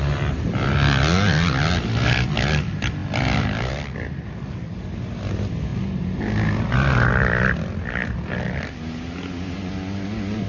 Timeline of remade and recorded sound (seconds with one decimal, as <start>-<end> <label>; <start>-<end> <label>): 0.0-10.5 recorded